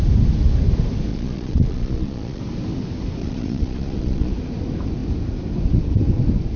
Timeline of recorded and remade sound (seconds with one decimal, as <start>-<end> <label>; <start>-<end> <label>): 0.0-1.1 recorded; 1.1-2.4 remade; 2.4-3.2 recorded; 3.2-4.3 remade; 4.3-6.6 recorded